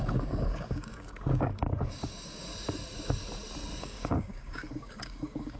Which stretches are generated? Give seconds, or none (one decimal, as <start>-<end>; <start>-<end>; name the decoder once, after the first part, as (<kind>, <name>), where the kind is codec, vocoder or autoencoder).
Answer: 0.0-2.5 (codec, DAC); 3.8-5.6